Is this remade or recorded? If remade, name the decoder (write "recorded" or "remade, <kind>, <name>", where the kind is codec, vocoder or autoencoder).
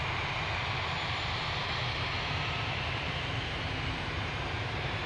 remade, vocoder, BigVGAN v2